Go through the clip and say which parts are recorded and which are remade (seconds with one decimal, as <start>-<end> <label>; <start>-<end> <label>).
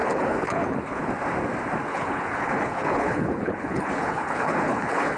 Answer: 0.0-1.1 remade; 1.1-1.9 recorded; 1.9-5.2 remade